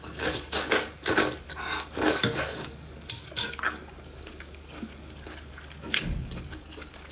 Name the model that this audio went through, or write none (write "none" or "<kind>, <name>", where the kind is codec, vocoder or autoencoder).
codec, DAC